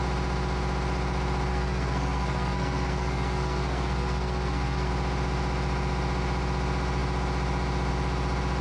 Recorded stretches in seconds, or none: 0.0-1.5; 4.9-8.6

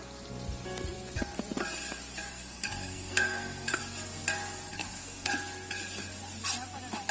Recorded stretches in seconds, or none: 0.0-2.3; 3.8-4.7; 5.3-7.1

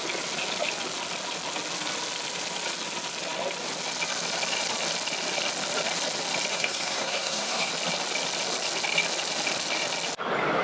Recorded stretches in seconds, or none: 0.0-6.5; 7.7-10.6

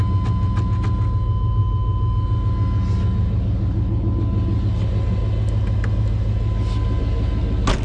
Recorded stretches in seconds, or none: 0.0-7.8

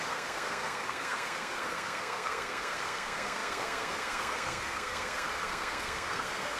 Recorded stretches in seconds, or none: none

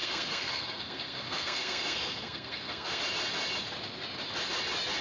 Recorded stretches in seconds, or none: 3.0-5.0

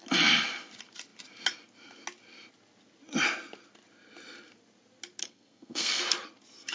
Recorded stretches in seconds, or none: 0.0-5.2; 6.0-6.7